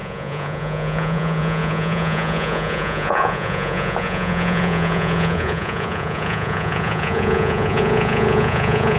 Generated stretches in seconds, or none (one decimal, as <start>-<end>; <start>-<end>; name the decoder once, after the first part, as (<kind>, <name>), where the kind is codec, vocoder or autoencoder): 0.0-9.0 (vocoder, Vocos)